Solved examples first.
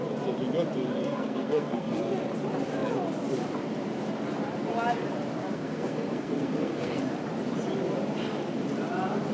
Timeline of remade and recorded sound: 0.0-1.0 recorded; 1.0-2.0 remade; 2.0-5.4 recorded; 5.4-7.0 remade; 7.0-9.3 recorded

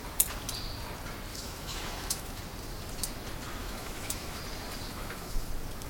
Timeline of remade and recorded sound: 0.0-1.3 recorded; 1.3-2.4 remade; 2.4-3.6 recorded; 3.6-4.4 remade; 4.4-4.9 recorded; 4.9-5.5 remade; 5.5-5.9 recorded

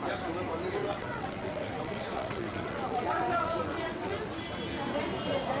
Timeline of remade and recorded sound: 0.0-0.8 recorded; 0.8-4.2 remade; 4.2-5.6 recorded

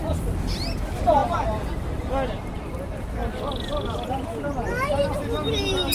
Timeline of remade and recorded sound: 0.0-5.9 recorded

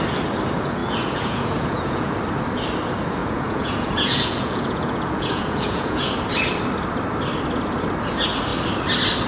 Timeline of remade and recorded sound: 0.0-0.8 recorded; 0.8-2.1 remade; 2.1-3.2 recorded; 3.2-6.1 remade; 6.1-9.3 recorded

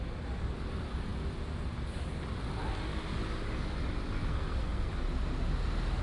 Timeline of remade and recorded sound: 0.0-4.3 recorded; 4.3-4.9 remade; 4.9-6.0 recorded